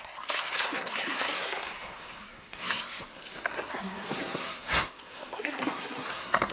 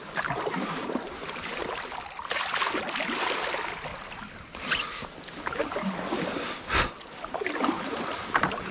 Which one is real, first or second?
second